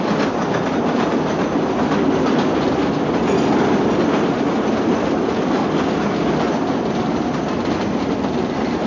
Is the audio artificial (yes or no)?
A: no